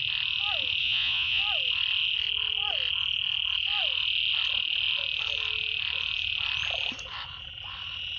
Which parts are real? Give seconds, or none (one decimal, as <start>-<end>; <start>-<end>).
0.0-0.8; 1.4-8.2